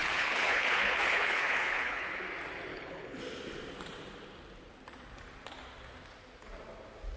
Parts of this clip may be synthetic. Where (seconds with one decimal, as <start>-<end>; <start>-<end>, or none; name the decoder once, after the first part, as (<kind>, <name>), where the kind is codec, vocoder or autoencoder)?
0.0-2.2 (codec, HILCodec); 2.7-3.2

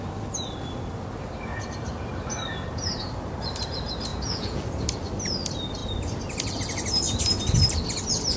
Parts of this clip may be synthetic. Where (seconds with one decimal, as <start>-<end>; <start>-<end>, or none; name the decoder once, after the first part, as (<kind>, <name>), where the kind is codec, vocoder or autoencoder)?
4.1-4.6 (vocoder, Vocos)

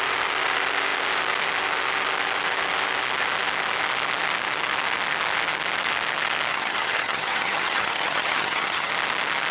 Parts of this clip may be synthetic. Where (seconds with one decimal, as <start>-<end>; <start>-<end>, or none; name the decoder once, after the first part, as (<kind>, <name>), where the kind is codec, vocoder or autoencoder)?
6.5-8.9 (vocoder, HiFi-GAN)

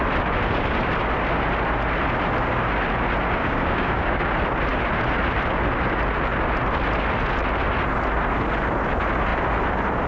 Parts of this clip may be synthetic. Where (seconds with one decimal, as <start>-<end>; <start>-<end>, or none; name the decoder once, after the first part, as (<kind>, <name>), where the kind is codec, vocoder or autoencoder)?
3.4-4.3 (codec, DAC)